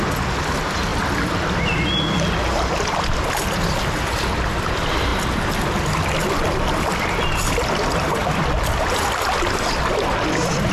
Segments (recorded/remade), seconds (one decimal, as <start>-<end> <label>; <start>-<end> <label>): 0.0-10.7 recorded